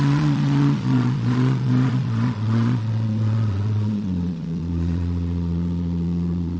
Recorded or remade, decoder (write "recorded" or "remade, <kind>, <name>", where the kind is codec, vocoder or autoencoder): remade, vocoder, Vocos